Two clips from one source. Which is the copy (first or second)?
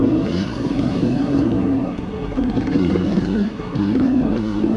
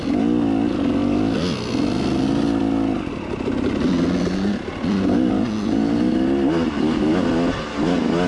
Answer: first